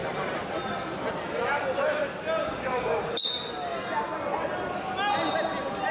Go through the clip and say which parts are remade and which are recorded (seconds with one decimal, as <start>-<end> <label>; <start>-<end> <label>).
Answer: 0.0-2.4 recorded; 2.4-3.3 remade; 3.3-5.9 recorded

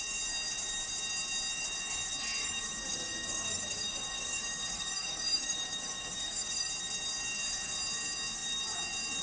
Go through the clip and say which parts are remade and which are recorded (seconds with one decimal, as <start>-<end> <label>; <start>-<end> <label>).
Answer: 0.0-2.4 recorded; 2.4-6.7 remade; 6.7-9.2 recorded

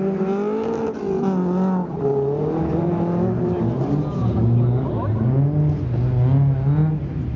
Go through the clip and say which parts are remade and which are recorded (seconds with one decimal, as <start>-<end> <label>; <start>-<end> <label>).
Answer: 0.0-4.2 recorded; 4.2-4.9 remade; 4.9-7.4 recorded

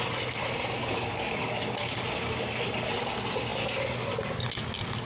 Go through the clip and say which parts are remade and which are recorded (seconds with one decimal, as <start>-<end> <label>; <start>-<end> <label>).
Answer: 0.0-0.8 recorded; 0.8-2.9 remade; 2.9-5.0 recorded

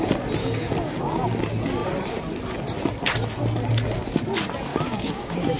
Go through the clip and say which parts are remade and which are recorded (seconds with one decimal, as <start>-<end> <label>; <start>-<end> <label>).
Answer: 0.0-0.4 recorded; 0.4-1.3 remade; 1.3-4.7 recorded; 4.7-5.6 remade

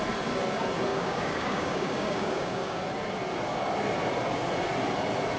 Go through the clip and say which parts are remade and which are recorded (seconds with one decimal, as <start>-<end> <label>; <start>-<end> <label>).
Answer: 0.0-0.9 recorded; 0.9-2.8 remade; 2.8-5.4 recorded

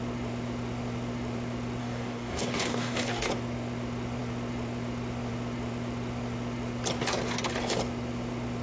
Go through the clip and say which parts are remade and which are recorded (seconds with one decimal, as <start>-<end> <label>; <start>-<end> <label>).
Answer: 0.0-1.8 recorded; 1.8-3.3 remade; 3.3-8.6 recorded

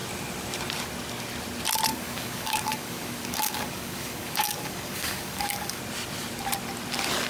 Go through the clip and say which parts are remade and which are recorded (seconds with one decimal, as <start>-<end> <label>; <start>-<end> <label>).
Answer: 0.0-1.9 recorded; 1.9-5.8 remade; 5.8-7.3 recorded